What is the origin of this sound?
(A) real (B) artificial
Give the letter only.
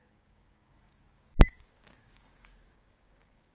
B